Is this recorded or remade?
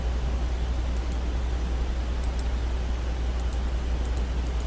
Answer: recorded